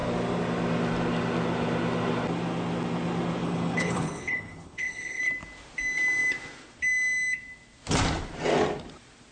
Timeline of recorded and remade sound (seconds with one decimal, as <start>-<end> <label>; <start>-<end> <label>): 0.0-3.4 recorded; 3.4-5.2 remade; 5.2-9.3 recorded